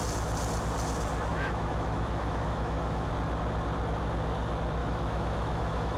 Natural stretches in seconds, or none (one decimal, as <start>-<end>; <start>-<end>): 0.0-1.3; 3.1-4.8